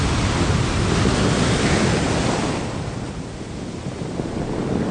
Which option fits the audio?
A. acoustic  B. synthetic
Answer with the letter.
A